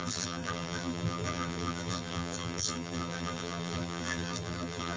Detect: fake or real fake